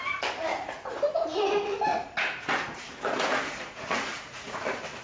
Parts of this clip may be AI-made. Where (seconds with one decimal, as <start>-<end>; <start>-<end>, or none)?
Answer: 0.5-1.1; 1.9-4.6